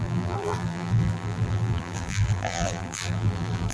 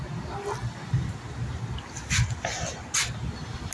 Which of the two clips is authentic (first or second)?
second